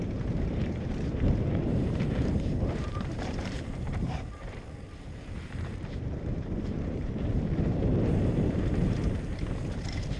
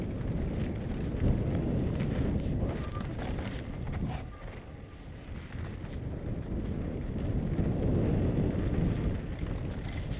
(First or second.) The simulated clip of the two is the first